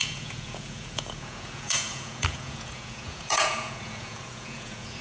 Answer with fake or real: fake